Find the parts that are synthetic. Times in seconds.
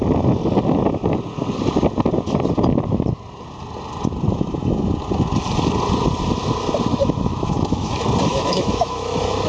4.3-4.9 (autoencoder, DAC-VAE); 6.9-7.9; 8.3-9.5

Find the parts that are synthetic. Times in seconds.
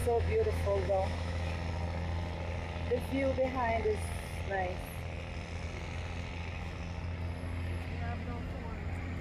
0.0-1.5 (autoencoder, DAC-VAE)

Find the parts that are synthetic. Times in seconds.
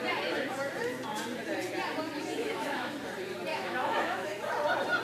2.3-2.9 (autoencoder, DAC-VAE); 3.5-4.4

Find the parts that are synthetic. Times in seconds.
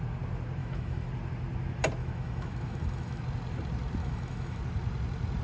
0.6-1.1 (autoencoder, DAC-VAE); 2.0-3.2; 4.0-4.6